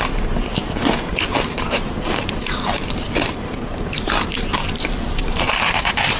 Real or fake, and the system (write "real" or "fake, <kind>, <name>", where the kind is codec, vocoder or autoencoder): fake, vocoder, BigVGAN v2